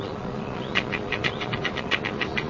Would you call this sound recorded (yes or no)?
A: no